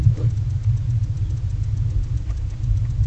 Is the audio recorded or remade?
recorded